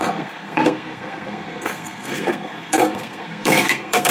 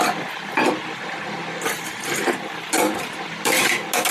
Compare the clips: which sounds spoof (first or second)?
first